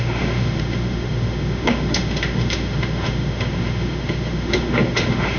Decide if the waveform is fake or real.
fake